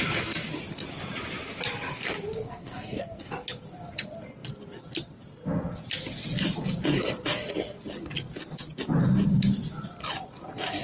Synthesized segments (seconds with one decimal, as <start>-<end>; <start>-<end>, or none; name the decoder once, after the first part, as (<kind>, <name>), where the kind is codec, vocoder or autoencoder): 2.4-3.2 (codec, SNAC)